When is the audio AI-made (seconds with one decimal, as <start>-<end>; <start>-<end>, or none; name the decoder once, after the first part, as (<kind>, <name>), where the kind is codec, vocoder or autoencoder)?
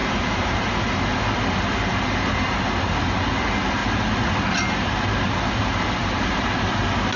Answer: 0.0-1.2 (vocoder, BigVGAN v2); 6.0-6.7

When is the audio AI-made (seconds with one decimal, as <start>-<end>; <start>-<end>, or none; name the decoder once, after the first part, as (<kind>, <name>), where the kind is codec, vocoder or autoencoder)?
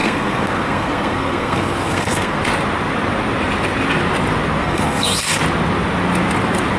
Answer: 0.0-2.4 (codec, SNAC); 4.6-5.4